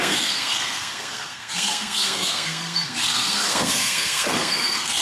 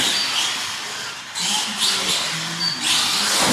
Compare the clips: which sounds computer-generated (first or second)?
first